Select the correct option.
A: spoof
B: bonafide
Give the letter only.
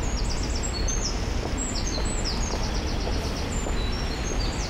B